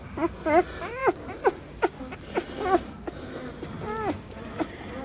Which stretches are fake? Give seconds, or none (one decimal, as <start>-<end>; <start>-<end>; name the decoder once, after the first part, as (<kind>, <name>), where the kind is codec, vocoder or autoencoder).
none